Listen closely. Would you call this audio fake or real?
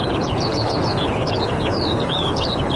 fake